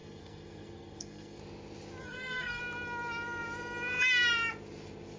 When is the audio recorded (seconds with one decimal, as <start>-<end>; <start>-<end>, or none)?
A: 1.4-2.0; 2.6-5.2